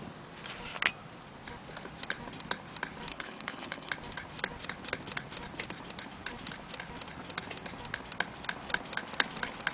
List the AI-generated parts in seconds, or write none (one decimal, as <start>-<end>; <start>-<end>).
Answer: 3.1-3.9